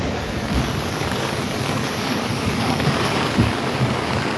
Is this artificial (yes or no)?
yes